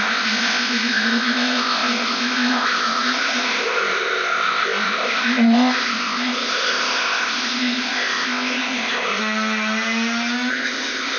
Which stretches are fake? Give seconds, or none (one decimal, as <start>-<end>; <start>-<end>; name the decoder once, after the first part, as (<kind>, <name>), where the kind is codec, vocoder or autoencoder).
0.0-9.2 (codec, ZipCodec); 10.5-11.2